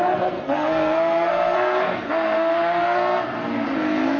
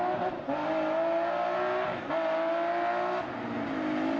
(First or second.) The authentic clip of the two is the second